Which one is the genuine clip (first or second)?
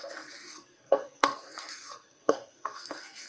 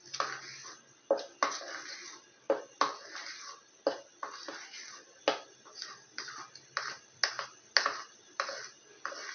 second